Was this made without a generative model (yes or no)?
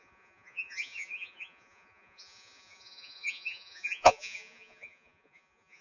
no